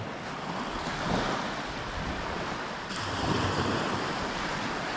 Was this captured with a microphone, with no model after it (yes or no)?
yes